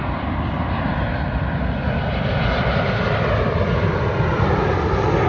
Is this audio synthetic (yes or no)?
yes